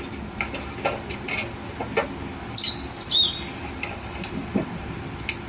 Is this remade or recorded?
recorded